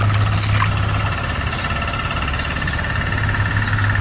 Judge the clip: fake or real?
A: real